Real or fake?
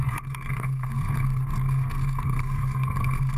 fake